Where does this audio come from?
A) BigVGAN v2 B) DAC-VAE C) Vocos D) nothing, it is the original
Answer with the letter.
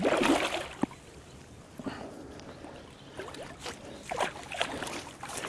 D